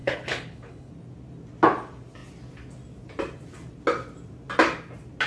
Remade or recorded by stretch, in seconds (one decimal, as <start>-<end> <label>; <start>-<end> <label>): 0.0-0.9 remade; 0.9-5.3 recorded